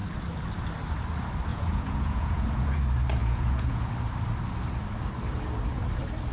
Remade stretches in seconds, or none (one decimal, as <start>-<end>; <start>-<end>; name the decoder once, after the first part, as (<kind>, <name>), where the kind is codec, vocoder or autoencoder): 1.5-2.8 (vocoder, Vocos); 3.2-3.9